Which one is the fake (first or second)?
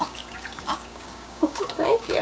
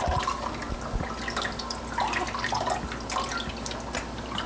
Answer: first